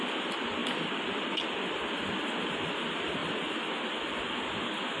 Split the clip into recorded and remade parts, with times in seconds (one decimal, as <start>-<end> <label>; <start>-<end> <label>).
0.0-5.0 recorded